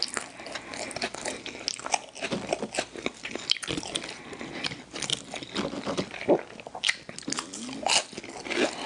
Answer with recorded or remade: recorded